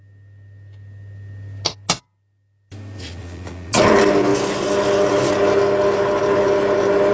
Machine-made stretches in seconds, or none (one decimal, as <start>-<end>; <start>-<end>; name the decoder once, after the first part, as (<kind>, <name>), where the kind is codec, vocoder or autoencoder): 3.0-3.8 (vocoder, Vocos)